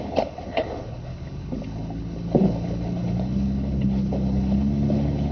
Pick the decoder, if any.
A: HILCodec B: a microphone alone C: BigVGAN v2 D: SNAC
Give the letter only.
A